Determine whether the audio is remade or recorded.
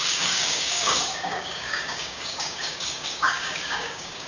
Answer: remade